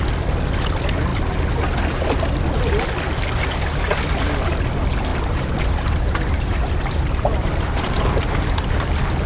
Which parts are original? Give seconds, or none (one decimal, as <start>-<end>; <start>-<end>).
0.0-5.1; 8.7-9.3

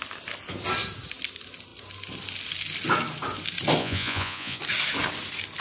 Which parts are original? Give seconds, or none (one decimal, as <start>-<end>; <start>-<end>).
0.0-3.8; 4.6-5.6

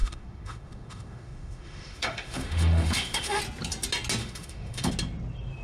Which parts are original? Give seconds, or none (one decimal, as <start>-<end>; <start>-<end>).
3.4-4.2; 4.9-5.6

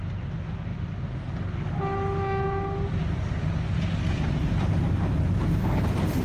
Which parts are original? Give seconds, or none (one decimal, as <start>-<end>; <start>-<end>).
0.0-6.2

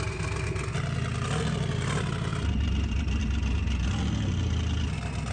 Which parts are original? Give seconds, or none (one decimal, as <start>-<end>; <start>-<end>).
0.0-5.3

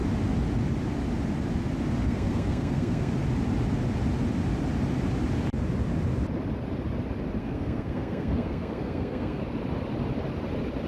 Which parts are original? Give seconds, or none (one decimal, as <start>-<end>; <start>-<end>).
0.0-2.0; 3.1-7.4; 9.4-10.9